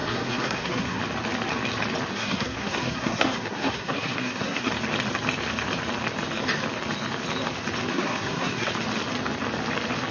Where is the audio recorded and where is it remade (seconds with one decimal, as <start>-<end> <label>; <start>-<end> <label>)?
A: 0.0-1.0 remade; 1.0-2.1 recorded; 2.1-4.7 remade; 4.7-7.9 recorded; 7.9-8.7 remade; 8.7-10.1 recorded